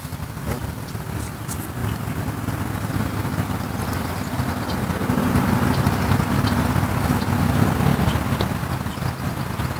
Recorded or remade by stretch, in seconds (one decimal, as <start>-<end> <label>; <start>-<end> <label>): 0.0-9.8 recorded

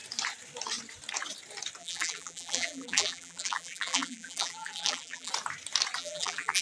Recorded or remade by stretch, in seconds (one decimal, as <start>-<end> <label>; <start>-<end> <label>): 0.0-1.8 recorded; 1.8-5.3 remade; 5.3-6.0 recorded; 6.0-6.6 remade

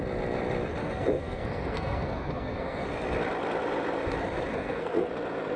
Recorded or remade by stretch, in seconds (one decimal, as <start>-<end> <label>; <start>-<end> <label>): 0.0-0.8 recorded; 0.8-2.8 remade; 2.8-4.5 recorded; 4.5-5.1 remade; 5.1-5.6 recorded

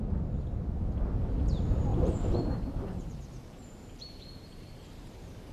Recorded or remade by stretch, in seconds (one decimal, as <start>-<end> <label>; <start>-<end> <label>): 0.0-1.9 recorded; 1.9-5.5 remade

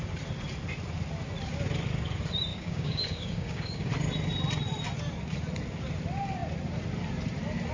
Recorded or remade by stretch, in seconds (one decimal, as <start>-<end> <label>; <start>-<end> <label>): 0.0-2.5 recorded; 2.5-3.9 remade; 3.9-7.7 recorded

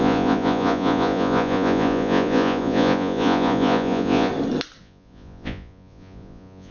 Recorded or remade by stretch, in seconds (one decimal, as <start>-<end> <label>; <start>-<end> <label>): 0.0-4.3 remade; 4.3-4.8 recorded; 4.8-6.7 remade